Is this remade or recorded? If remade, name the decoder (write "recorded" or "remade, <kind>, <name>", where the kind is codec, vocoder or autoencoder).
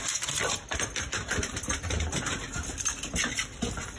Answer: recorded